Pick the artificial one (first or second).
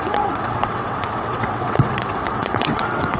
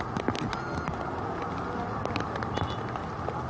first